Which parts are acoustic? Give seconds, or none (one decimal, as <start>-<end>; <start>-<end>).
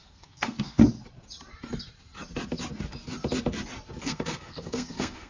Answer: 0.8-4.0